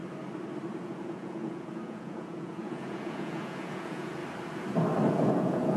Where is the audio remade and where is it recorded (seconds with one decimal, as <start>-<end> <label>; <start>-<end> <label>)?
0.0-0.7 recorded; 0.7-4.2 remade; 4.2-5.1 recorded; 5.1-5.8 remade